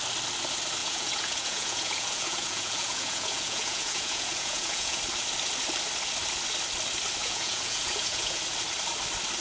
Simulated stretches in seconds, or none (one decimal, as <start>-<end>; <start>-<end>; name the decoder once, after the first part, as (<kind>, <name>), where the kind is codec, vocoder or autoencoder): 0.8-5.0 (vocoder, Vocos); 7.2-8.4